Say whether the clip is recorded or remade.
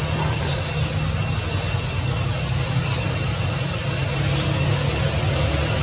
recorded